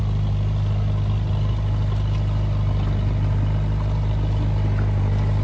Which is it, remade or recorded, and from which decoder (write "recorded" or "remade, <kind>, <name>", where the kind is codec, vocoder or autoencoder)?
recorded